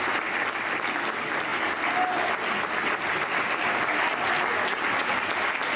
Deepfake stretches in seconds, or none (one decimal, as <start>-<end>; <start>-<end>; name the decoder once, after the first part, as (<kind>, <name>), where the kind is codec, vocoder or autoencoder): none